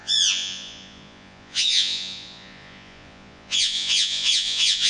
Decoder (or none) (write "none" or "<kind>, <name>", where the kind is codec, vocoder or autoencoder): vocoder, Vocos